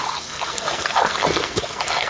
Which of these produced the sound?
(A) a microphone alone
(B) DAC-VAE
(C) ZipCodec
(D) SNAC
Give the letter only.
D